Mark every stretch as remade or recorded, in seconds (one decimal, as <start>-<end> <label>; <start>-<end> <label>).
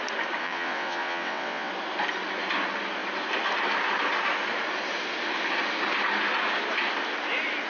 0.0-0.4 recorded; 0.4-1.7 remade; 1.7-7.7 recorded